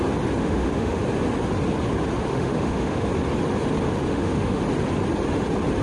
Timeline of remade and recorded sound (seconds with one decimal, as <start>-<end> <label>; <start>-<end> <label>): 0.0-0.4 recorded; 0.4-1.0 remade; 1.0-2.3 recorded; 2.3-3.1 remade; 3.1-4.1 recorded; 4.1-4.6 remade; 4.6-5.8 recorded